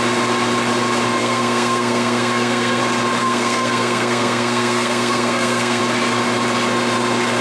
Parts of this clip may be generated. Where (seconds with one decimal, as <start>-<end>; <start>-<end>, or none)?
1.2-2.8; 3.2-5.8